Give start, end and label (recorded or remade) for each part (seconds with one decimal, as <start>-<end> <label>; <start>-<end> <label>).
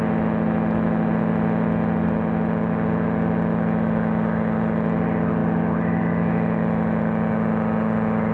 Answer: 0.0-5.4 recorded; 5.4-6.0 remade; 6.0-8.3 recorded